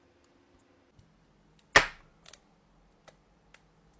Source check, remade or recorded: recorded